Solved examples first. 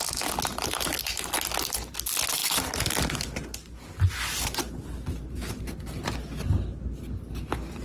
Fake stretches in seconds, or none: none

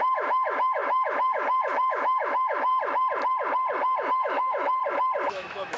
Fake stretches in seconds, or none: 0.0-2.7 (autoencoder, DAC-VAE); 4.1-4.8; 5.3-5.8

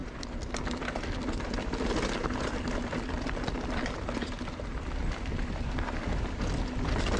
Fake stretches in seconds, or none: none

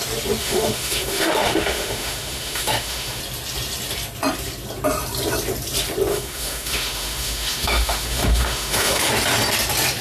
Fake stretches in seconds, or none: 0.4-3.2 (autoencoder, DAC-VAE); 6.1-9.1

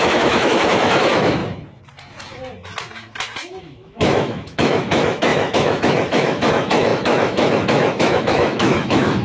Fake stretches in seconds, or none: 0.0-1.4 (autoencoder, DAC-VAE); 3.6-9.2